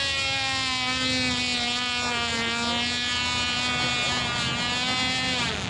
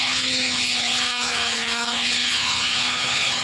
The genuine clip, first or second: first